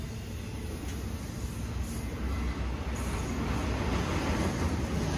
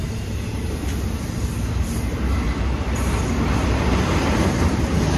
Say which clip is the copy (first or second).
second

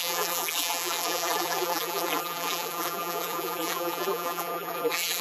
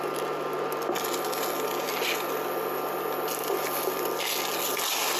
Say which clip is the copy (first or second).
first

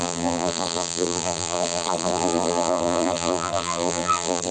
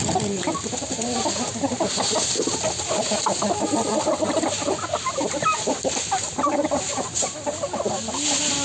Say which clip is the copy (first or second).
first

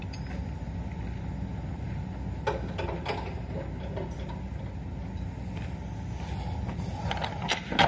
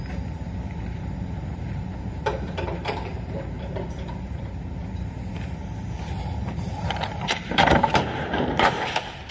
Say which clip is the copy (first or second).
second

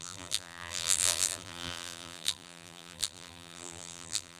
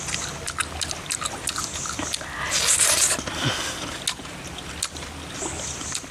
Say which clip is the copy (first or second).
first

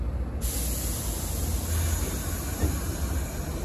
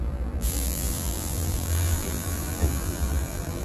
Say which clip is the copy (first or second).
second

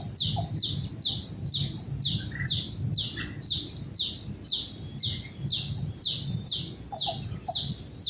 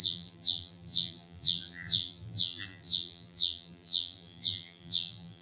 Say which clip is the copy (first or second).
second